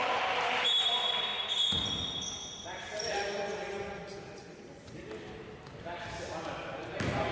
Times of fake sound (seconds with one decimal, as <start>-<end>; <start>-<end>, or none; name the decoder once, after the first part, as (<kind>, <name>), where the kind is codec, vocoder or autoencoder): none